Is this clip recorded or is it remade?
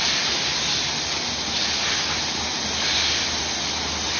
recorded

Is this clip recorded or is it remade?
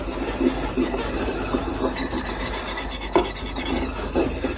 recorded